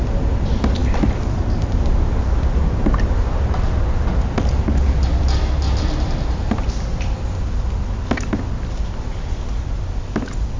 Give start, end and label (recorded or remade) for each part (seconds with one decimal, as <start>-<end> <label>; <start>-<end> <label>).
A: 0.0-10.6 recorded